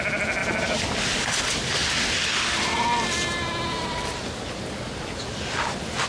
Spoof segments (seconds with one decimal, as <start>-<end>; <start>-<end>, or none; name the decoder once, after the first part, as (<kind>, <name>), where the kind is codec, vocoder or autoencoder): none

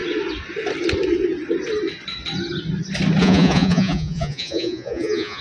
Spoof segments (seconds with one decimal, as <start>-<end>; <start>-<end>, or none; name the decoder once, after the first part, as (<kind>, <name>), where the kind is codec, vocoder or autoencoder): 3.2-5.4 (vocoder, Vocos)